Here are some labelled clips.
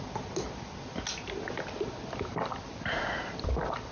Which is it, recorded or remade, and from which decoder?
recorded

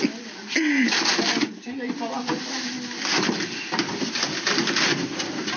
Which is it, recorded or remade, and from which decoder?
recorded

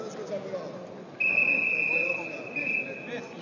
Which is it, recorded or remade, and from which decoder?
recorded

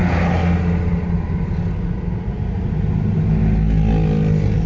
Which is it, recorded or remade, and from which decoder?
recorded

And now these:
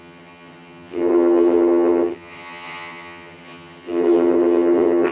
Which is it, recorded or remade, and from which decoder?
remade, vocoder, HiFi-GAN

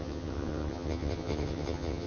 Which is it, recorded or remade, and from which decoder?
remade, vocoder, HiFi-GAN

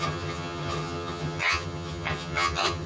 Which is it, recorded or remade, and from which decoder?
remade, vocoder, HiFi-GAN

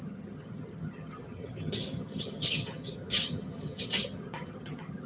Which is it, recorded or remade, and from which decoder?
remade, vocoder, HiFi-GAN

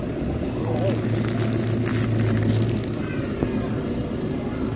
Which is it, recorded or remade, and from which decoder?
recorded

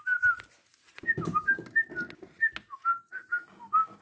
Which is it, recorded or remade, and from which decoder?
recorded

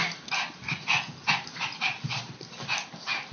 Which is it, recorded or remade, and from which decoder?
recorded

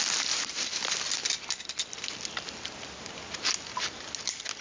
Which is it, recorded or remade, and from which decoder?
recorded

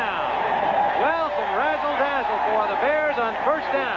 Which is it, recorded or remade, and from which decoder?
recorded